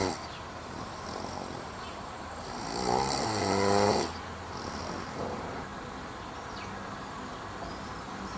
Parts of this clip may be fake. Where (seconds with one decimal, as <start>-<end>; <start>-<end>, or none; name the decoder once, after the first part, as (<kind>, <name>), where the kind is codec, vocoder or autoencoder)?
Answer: 0.0-2.6 (vocoder, BigVGAN v2)